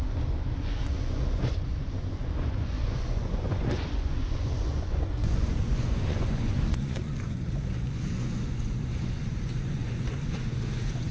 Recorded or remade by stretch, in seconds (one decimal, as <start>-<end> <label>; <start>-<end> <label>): 0.0-11.1 remade